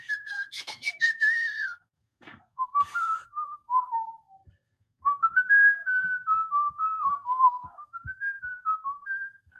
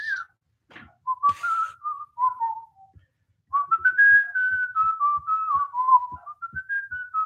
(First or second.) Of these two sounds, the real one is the second